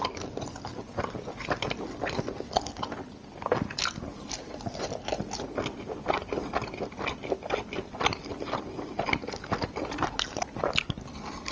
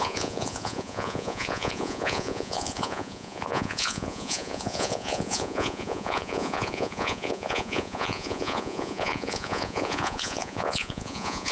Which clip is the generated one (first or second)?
second